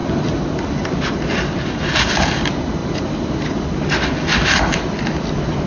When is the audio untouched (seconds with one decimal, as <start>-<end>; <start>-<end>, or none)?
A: 0.0-5.7